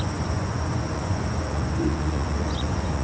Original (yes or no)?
no